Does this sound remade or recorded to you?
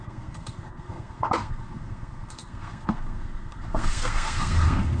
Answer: remade